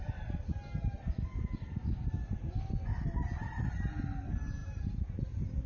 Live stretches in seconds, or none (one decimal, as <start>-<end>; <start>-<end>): 0.0-4.6; 5.2-5.7